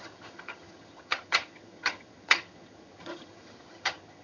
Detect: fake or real fake